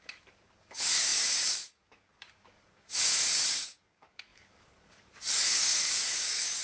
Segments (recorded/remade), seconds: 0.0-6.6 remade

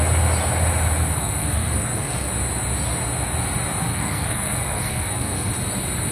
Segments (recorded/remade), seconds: 0.0-1.2 recorded; 1.2-2.3 remade; 2.3-3.9 recorded; 3.9-5.5 remade; 5.5-6.1 recorded

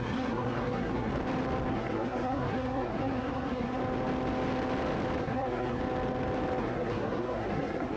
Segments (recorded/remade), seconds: 0.0-1.1 remade; 1.1-1.7 recorded; 1.7-3.8 remade; 3.8-5.2 recorded; 5.2-5.8 remade; 5.8-6.6 recorded; 6.6-8.0 remade

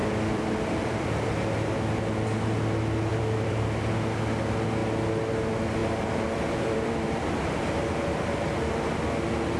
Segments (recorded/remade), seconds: 0.0-1.7 remade; 1.7-3.1 recorded; 3.1-3.9 remade; 3.9-5.8 recorded; 5.8-8.7 remade; 8.7-9.6 recorded

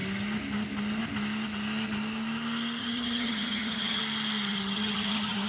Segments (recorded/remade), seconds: 0.0-2.8 recorded; 2.8-4.0 remade; 4.0-4.5 recorded; 4.5-5.5 remade

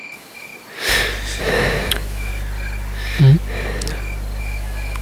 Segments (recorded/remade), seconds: 0.0-0.5 remade; 0.5-1.4 recorded; 1.4-2.3 remade; 2.3-4.4 recorded; 4.4-5.0 remade